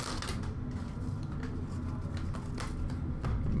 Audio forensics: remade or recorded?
recorded